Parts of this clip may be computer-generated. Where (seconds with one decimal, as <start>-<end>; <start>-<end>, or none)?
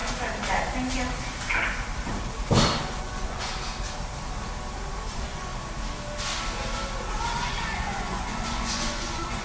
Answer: 3.0-3.5; 5.1-5.5; 7.4-9.4